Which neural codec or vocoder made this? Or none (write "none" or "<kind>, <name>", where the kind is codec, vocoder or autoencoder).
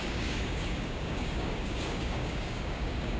codec, DAC